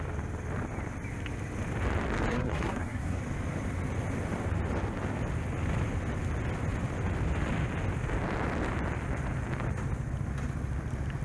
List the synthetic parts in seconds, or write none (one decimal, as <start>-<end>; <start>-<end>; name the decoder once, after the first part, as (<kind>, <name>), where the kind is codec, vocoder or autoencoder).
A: 2.3-3.2 (codec, SNAC)